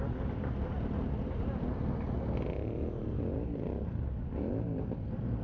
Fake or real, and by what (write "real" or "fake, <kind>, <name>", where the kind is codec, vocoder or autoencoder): real